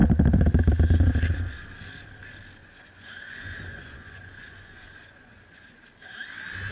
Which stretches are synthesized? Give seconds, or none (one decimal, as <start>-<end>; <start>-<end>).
2.6-5.8